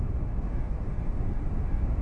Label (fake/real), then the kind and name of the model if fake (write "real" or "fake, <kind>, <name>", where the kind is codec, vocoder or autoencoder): fake, autoencoder, DAC-VAE